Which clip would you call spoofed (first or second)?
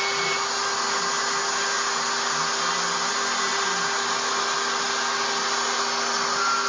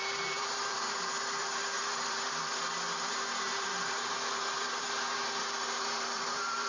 second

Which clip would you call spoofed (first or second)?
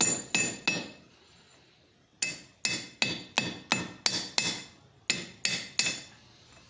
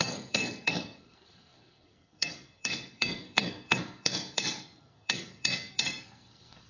second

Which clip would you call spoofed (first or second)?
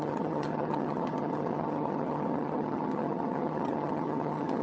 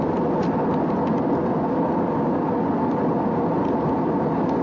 first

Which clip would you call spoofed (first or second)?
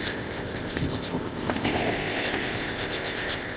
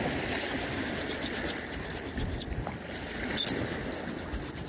first